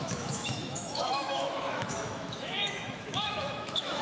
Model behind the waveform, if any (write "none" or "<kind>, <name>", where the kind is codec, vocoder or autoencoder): autoencoder, DAC-VAE